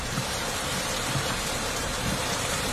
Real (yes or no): no